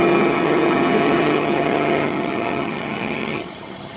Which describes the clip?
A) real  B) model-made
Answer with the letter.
B